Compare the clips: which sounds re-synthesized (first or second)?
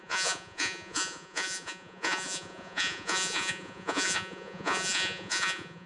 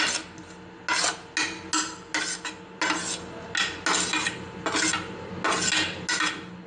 first